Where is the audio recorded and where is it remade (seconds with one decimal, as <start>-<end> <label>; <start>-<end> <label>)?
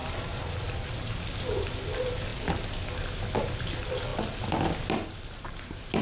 0.0-6.0 recorded